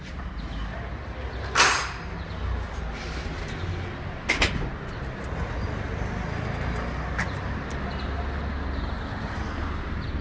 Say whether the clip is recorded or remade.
recorded